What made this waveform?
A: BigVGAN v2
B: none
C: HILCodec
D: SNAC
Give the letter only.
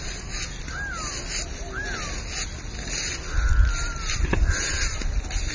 B